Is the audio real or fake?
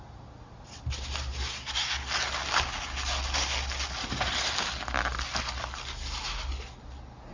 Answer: real